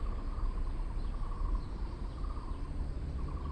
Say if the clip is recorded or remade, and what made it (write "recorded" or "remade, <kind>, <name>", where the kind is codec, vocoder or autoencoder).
recorded